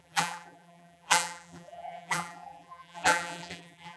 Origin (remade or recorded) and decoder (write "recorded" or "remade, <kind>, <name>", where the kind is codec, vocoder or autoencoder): remade, vocoder, BigVGAN v2